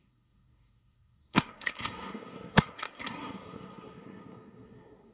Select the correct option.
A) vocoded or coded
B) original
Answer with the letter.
A